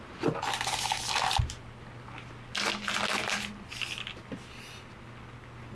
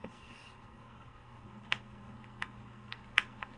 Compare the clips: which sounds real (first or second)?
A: first